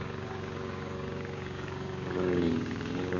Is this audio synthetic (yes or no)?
yes